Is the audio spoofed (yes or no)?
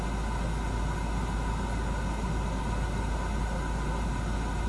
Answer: no